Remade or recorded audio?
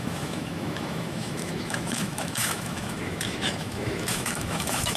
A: remade